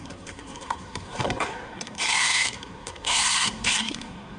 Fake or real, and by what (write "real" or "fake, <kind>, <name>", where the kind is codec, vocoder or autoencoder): fake, codec, SNAC